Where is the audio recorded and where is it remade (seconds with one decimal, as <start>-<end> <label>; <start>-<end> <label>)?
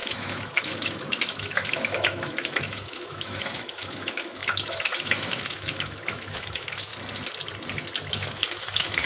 0.0-6.9 remade; 6.9-8.1 recorded; 8.1-9.1 remade